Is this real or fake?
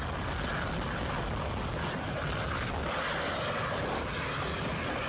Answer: real